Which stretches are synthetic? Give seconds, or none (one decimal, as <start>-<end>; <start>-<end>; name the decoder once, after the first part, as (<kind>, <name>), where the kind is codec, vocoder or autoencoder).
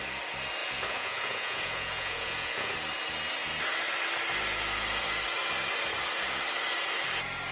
0.6-2.7 (vocoder, Vocos)